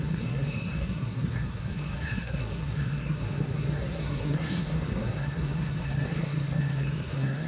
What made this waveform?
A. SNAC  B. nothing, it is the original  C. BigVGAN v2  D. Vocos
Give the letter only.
A